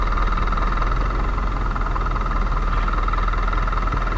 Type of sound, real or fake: real